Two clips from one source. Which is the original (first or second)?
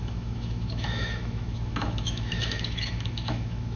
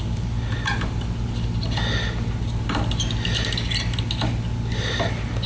second